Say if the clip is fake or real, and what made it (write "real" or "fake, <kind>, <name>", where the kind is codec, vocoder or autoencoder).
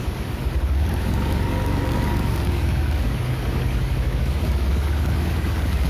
fake, codec, DAC